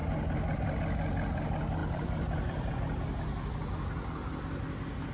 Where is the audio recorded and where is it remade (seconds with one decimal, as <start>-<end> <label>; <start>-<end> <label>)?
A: 0.0-0.8 remade; 0.8-1.8 recorded; 1.8-2.7 remade; 2.7-5.1 recorded